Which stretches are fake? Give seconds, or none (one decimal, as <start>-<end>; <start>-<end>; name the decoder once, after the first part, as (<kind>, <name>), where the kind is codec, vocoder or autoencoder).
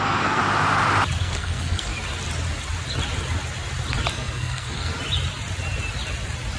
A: 0.0-0.4 (codec, SNAC); 1.2-1.9; 4.1-4.9